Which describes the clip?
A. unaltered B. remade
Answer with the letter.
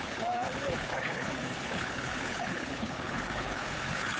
B